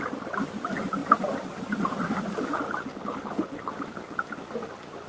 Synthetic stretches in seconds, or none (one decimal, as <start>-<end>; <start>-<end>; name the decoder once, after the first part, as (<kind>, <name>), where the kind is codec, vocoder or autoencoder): 2.9-3.7 (codec, HILCodec)